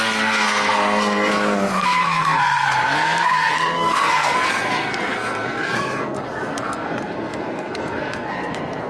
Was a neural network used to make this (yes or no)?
yes